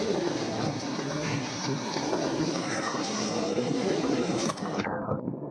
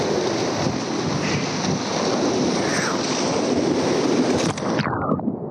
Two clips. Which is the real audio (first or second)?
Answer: second